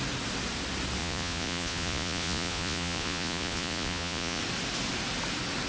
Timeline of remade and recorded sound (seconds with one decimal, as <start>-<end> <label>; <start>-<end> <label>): 0.0-1.0 recorded; 1.0-4.4 remade; 4.4-5.7 recorded